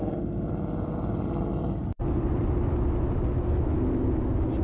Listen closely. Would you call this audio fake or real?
real